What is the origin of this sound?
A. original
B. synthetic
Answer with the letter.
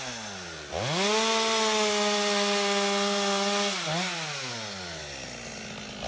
A